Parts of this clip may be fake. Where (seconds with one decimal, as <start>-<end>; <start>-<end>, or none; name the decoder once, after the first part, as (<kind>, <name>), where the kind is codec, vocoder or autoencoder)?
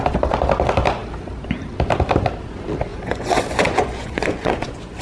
2.9-5.0 (vocoder, Vocos)